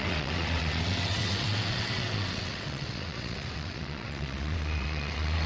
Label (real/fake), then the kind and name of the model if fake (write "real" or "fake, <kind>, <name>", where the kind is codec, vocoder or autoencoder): fake, vocoder, WaveNeXt